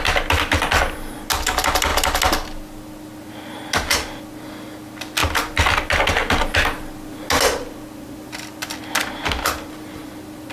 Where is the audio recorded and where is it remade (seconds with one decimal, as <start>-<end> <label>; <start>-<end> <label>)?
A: 0.0-10.5 recorded